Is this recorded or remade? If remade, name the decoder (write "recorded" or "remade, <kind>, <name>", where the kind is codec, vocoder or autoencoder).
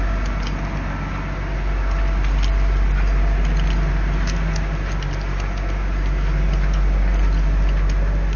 recorded